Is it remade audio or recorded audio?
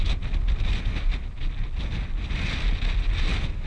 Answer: recorded